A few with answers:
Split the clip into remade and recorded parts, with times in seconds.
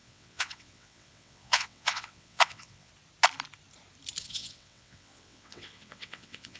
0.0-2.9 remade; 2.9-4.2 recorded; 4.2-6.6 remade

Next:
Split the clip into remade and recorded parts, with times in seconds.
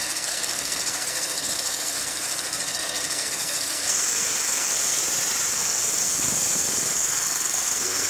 0.0-5.0 remade; 5.0-5.5 recorded; 5.5-8.1 remade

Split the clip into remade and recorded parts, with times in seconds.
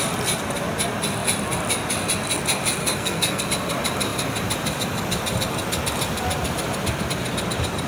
0.0-2.8 recorded; 2.8-3.4 remade; 3.4-7.9 recorded